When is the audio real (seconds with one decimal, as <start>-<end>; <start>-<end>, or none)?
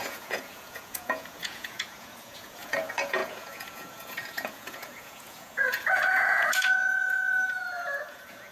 none